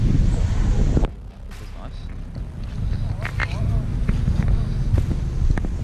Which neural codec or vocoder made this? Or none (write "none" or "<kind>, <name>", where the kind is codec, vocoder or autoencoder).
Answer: none